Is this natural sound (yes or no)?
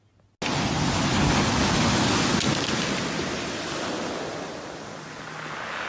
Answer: yes